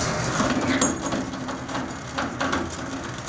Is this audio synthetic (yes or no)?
no